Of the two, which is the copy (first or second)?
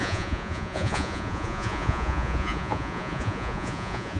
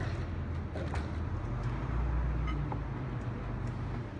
first